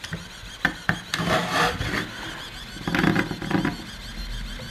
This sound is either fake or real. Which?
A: real